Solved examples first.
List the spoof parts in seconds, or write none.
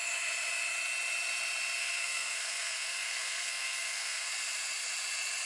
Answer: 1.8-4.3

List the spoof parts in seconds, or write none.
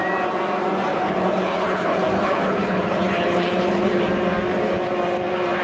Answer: 0.9-4.0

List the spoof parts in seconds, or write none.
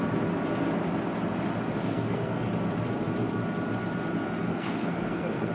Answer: 1.8-2.5; 4.5-5.5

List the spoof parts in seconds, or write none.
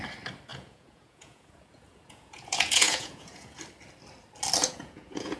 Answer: 0.5-3.6; 4.6-5.4